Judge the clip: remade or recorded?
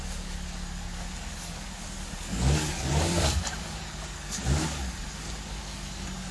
remade